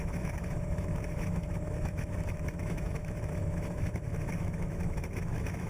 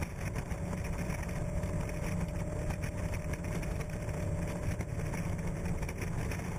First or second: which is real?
second